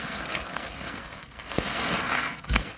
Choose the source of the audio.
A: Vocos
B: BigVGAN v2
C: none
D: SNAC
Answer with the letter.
D